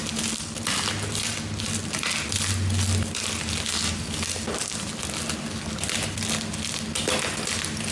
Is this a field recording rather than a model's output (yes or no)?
yes